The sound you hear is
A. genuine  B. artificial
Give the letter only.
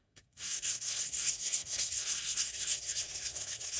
B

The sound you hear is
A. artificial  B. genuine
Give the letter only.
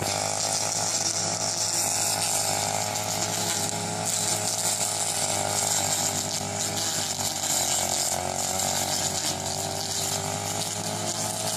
B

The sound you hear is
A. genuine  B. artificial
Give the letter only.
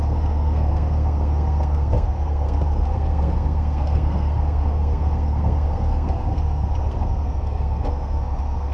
B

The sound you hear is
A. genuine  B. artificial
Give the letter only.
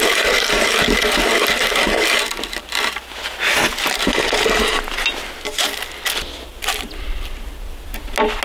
A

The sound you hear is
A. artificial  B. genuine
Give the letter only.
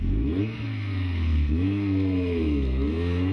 A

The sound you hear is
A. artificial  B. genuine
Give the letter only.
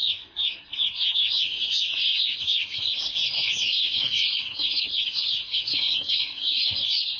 A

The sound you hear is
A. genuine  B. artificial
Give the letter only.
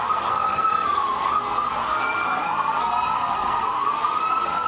B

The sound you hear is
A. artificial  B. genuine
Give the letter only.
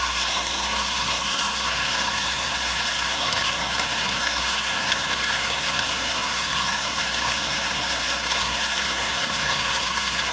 A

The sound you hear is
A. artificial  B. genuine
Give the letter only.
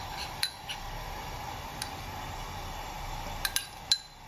B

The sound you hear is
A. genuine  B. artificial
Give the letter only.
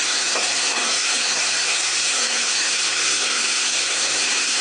B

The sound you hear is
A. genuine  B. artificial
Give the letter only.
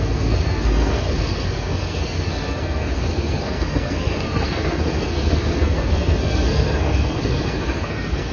B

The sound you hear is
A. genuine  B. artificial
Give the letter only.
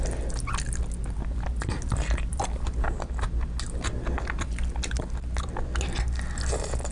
A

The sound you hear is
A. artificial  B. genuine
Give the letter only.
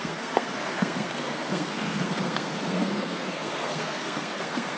A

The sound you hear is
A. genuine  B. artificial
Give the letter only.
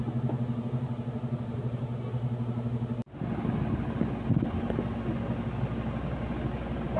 A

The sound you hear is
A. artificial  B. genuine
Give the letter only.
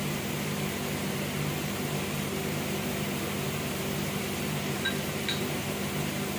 B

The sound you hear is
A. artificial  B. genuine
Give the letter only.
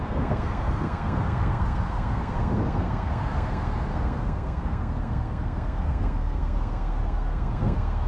A